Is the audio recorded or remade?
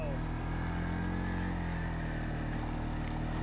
recorded